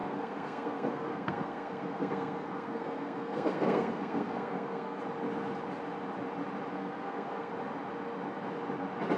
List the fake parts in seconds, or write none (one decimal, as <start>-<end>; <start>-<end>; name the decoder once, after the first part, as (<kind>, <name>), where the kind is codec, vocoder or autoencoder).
0.0-5.0 (codec, SNAC); 6.7-7.5